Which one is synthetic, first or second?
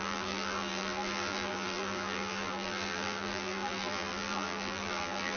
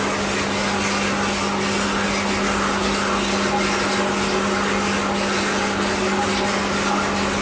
first